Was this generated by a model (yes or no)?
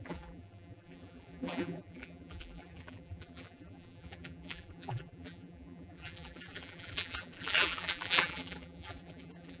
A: yes